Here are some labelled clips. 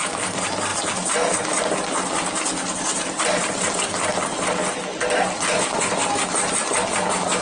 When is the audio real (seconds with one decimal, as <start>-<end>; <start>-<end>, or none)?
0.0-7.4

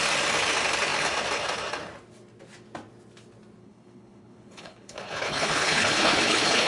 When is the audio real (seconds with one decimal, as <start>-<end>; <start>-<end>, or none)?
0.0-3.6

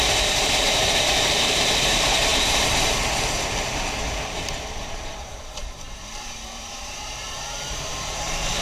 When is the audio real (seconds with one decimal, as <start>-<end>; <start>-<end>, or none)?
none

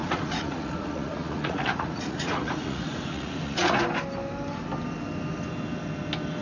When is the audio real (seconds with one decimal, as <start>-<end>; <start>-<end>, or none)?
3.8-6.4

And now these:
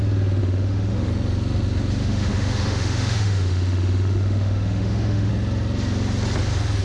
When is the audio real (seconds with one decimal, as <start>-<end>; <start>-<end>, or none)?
0.0-0.4; 1.1-2.0; 5.3-6.8

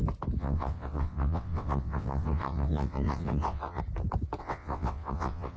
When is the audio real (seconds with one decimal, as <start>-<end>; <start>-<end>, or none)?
0.0-0.4; 3.8-4.4

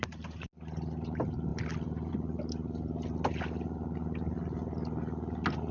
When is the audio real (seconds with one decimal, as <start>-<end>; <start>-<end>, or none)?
0.0-5.7

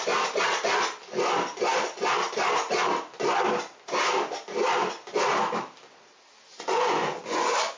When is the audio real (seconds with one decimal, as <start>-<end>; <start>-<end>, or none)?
0.0-6.5